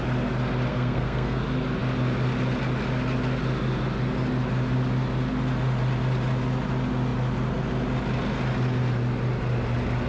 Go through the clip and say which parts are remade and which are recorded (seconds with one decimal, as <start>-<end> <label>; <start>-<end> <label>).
0.0-0.7 recorded; 0.7-1.4 remade; 1.4-10.1 recorded

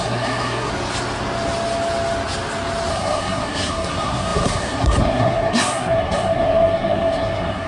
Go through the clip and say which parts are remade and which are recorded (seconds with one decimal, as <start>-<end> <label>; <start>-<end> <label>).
0.0-0.7 remade; 0.7-2.9 recorded; 2.9-7.7 remade

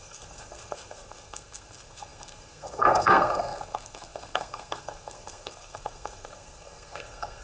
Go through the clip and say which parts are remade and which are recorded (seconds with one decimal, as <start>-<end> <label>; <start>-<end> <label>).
0.0-7.4 remade

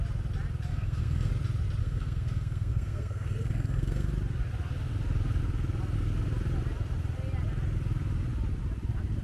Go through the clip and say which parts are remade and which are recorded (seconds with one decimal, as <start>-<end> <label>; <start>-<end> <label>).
0.0-0.7 recorded; 0.7-1.3 remade; 1.3-1.8 recorded; 1.8-4.1 remade; 4.1-9.2 recorded

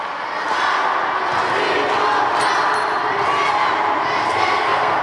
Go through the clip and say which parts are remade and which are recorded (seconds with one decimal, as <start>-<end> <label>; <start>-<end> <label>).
0.0-4.2 recorded; 4.2-5.0 remade

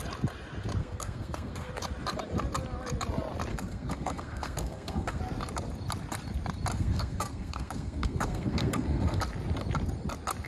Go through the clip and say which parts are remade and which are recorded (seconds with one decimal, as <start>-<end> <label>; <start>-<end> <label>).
0.0-0.8 recorded; 0.8-1.7 remade; 1.7-3.5 recorded; 3.5-5.2 remade; 5.2-6.7 recorded; 6.7-9.2 remade; 9.2-10.5 recorded